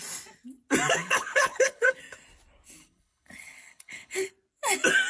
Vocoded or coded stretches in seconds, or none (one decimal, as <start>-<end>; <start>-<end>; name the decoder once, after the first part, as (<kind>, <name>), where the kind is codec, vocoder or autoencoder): 1.0-2.0 (codec, HILCodec); 2.8-4.3